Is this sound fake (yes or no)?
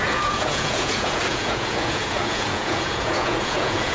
yes